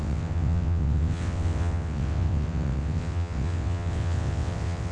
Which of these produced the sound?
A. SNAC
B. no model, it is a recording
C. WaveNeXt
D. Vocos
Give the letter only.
C